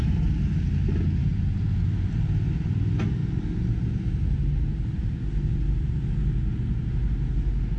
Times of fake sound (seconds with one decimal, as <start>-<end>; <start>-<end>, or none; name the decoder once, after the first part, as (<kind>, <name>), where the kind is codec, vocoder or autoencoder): none